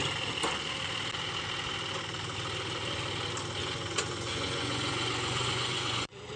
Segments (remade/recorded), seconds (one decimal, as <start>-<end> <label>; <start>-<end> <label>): 0.0-3.6 recorded; 3.6-6.4 remade